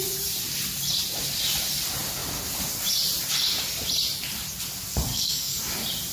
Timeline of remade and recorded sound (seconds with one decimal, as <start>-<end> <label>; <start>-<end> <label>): 0.0-5.1 recorded; 5.1-5.6 remade; 5.6-6.1 recorded